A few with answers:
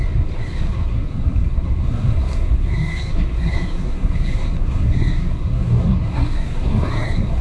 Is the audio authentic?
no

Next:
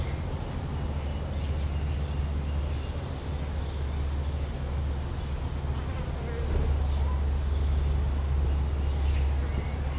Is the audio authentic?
yes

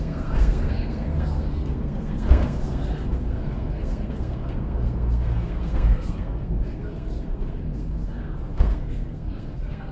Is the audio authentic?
no